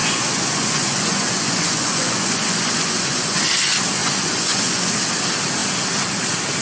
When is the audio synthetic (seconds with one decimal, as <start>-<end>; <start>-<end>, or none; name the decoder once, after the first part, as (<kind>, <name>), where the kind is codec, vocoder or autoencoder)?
0.0-3.5 (vocoder, Vocos); 4.0-4.9